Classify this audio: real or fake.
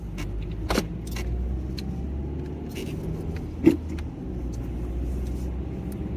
real